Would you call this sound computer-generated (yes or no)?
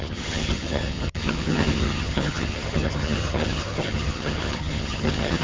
yes